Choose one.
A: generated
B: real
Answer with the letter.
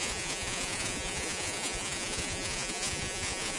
A